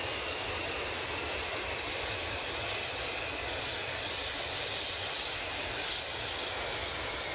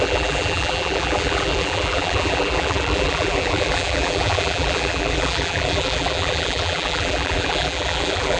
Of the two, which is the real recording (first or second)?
first